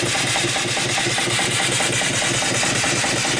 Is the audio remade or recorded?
recorded